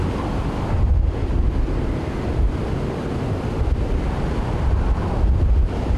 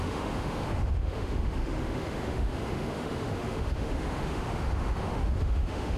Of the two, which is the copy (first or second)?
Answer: second